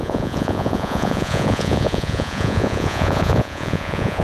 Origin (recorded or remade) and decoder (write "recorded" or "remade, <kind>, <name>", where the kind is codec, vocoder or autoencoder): remade, vocoder, Vocos